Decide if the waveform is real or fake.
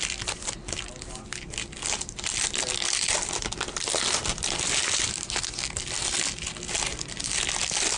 real